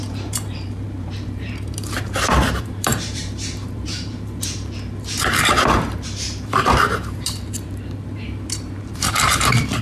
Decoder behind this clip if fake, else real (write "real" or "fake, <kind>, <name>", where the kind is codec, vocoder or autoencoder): fake, vocoder, BigVGAN v2